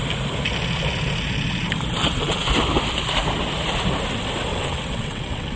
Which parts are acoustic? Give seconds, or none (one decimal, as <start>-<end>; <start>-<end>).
0.0-2.0; 2.5-4.5